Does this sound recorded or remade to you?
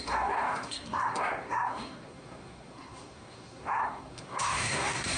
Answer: remade